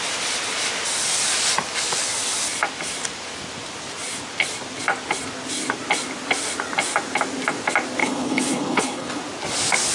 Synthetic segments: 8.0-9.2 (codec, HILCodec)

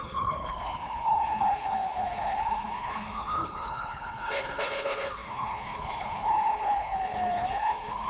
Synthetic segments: 0.0-8.1 (codec, HILCodec)

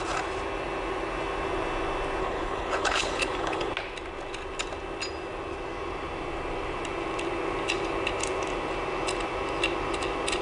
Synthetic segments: 2.2-3.7 (codec, HILCodec)